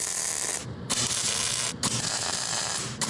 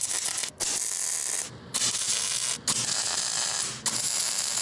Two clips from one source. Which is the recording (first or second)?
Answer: second